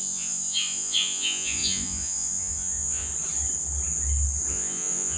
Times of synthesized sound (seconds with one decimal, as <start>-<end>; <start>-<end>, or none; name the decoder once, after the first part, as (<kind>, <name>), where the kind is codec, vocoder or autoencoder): 0.0-3.1 (vocoder, Vocos); 4.5-5.2

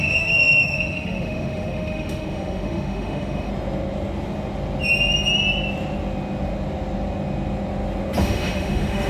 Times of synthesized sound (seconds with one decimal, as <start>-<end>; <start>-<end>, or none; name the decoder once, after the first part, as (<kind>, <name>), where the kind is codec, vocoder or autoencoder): 0.0-3.5 (autoencoder, DAC-VAE); 8.2-9.1

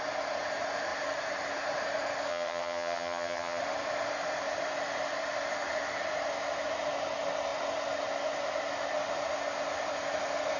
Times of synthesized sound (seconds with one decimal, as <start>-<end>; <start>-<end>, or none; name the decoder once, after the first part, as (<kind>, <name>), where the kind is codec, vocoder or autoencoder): 2.3-3.6 (vocoder, HiFi-GAN)